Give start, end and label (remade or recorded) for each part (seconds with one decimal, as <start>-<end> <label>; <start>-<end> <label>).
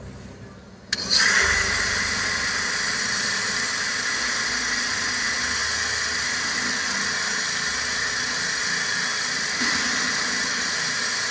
0.0-11.3 recorded